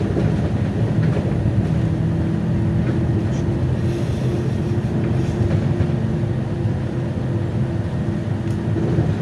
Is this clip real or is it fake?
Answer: real